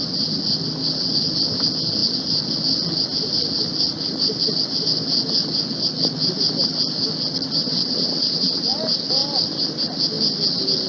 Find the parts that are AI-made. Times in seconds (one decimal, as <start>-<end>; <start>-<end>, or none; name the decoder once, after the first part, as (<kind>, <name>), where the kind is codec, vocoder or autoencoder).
7.6-8.6 (vocoder, WaveNeXt)